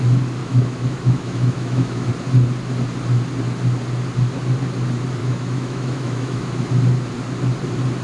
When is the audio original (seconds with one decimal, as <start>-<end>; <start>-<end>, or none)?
0.0-0.4; 2.1-5.2; 6.7-8.0